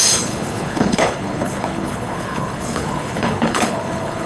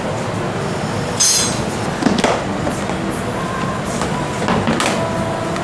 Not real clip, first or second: first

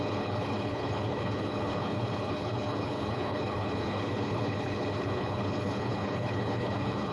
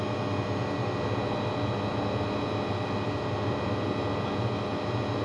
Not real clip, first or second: first